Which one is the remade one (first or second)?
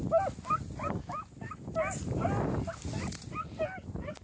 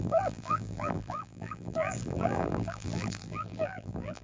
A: second